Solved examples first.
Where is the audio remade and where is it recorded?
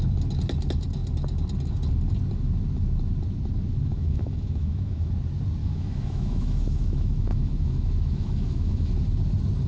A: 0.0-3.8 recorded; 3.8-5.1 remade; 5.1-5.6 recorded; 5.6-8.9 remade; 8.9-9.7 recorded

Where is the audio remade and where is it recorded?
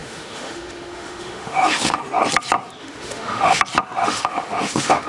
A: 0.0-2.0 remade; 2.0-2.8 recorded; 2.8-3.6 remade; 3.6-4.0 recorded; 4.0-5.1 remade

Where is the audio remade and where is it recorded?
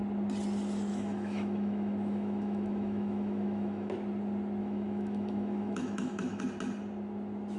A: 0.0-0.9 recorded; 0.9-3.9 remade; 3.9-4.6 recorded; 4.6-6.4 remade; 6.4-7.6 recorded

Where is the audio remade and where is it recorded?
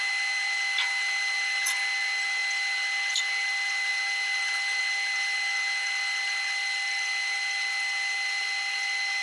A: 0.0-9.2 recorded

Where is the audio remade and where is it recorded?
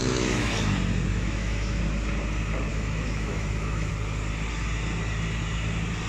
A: 0.0-0.5 remade; 0.5-1.1 recorded; 1.1-1.8 remade; 1.8-2.7 recorded; 2.7-3.9 remade; 3.9-6.1 recorded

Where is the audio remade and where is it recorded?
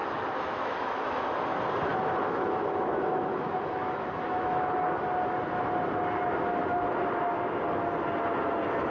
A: 0.0-1.3 remade; 1.3-1.9 recorded; 1.9-4.6 remade; 4.6-8.9 recorded